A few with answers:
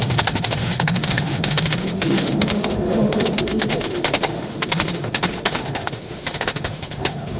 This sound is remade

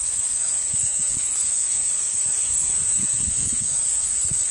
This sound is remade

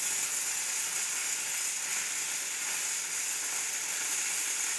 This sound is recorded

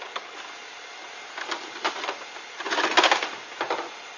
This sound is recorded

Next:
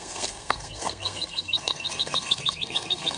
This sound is remade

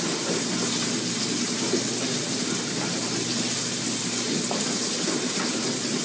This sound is recorded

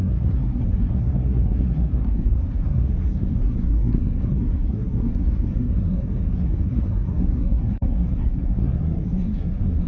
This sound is remade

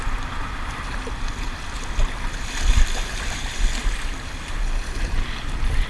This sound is recorded